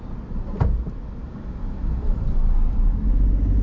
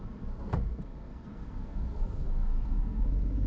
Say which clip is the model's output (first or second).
second